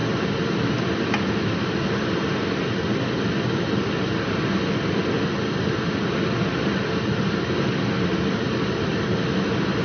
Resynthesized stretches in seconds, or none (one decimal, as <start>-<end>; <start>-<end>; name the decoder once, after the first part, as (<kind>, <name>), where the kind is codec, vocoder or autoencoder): none